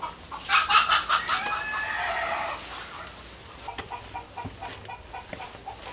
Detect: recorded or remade recorded